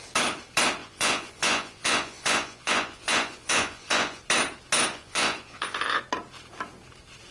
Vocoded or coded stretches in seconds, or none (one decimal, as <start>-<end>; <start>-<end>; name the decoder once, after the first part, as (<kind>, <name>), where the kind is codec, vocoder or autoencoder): 0.8-4.2 (vocoder, Vocos); 4.9-6.0